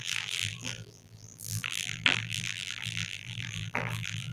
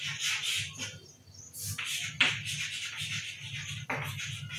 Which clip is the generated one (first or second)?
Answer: first